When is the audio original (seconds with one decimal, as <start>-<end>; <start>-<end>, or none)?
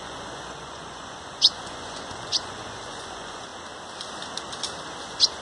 3.5-5.0